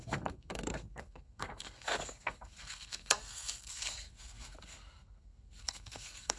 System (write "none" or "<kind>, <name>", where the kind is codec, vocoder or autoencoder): codec, SNAC